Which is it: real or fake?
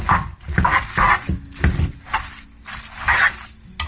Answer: real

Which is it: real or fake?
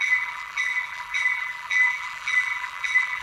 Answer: fake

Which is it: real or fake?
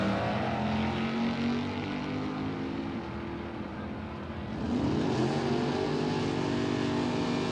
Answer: real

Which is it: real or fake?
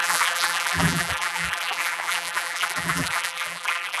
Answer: fake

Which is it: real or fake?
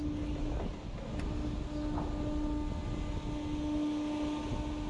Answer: real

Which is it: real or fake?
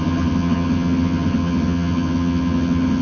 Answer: fake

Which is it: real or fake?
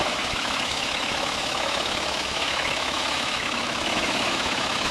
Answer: fake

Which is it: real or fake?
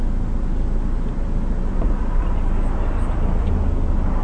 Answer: real